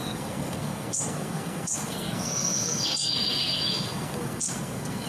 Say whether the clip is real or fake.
fake